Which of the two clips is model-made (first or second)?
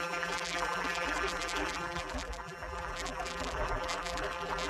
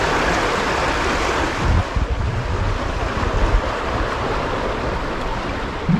first